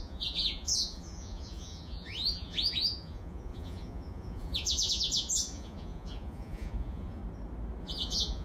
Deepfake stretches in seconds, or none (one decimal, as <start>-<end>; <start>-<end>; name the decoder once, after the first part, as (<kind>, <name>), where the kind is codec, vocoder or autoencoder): 0.0-7.2 (vocoder, Vocos); 7.8-8.4